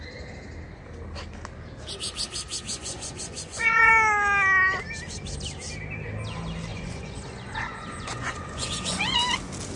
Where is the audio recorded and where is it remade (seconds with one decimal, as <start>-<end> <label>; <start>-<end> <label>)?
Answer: 0.0-2.7 recorded; 2.7-3.9 remade; 3.9-6.7 recorded; 6.7-9.2 remade; 9.2-9.8 recorded